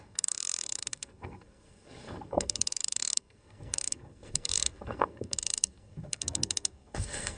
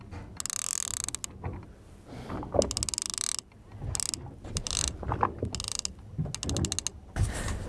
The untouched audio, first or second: second